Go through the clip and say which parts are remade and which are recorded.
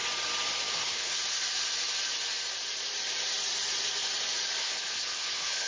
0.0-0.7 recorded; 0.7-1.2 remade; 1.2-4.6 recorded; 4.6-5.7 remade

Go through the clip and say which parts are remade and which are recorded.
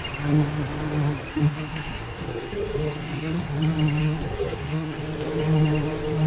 0.0-1.3 recorded; 1.3-3.5 remade; 3.5-4.0 recorded; 4.0-5.0 remade; 5.0-6.3 recorded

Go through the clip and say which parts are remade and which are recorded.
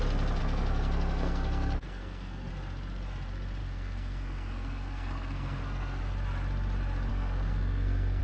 0.0-0.4 recorded; 0.4-2.5 remade; 2.5-3.6 recorded; 3.6-6.0 remade; 6.0-7.1 recorded; 7.1-8.2 remade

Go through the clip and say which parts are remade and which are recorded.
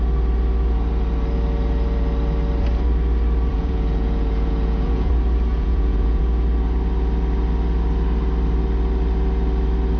0.0-3.5 recorded; 3.5-5.1 remade; 5.1-5.5 recorded; 5.5-6.2 remade; 6.2-10.0 recorded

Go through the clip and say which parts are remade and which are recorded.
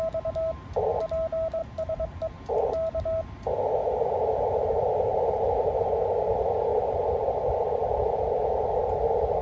0.0-1.6 recorded; 1.6-2.3 remade; 2.3-5.1 recorded; 5.1-5.6 remade; 5.6-6.7 recorded; 6.7-8.4 remade; 8.4-9.4 recorded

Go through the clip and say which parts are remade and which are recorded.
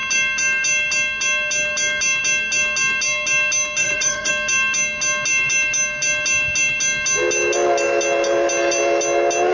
0.0-3.8 recorded; 3.8-4.3 remade; 4.3-9.5 recorded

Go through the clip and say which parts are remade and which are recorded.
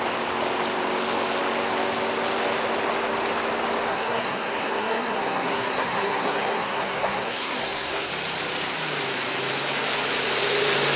0.0-3.9 recorded; 3.9-8.1 remade; 8.1-11.0 recorded